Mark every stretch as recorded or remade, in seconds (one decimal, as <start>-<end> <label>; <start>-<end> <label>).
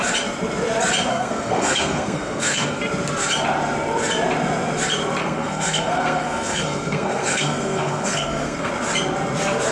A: 0.0-1.1 recorded; 1.1-2.8 remade; 2.8-5.2 recorded; 5.2-8.7 remade; 8.7-9.7 recorded